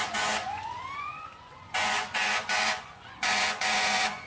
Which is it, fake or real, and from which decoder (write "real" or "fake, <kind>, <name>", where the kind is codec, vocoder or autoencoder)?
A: fake, vocoder, Vocos